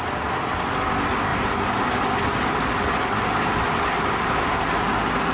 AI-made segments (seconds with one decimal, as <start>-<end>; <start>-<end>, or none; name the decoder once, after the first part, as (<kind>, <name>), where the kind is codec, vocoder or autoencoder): none